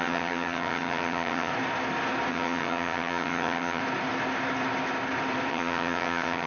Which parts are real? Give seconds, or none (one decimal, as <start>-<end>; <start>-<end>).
1.5-2.3; 3.8-5.5